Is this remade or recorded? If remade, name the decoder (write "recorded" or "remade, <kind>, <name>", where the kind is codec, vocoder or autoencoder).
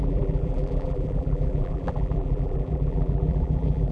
remade, vocoder, BigVGAN v2